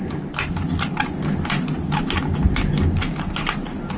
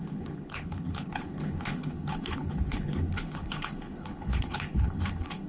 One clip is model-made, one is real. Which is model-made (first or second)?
second